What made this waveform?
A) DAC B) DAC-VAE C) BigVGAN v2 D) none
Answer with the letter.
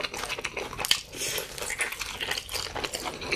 D